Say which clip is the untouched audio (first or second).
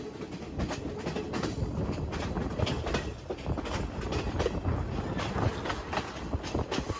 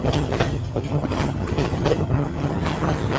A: first